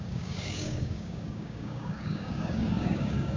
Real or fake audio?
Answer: fake